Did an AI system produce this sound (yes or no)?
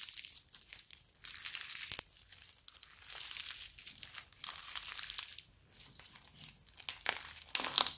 no